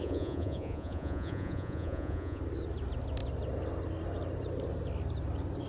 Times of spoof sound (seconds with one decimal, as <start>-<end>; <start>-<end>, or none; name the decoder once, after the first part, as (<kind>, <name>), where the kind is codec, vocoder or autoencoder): 0.0-2.4 (vocoder, Vocos)